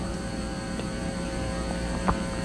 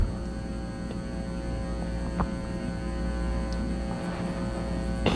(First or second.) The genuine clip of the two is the second